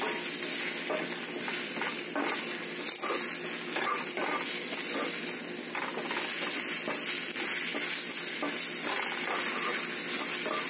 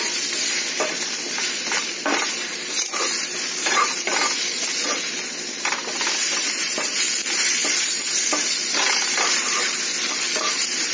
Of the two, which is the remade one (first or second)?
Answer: second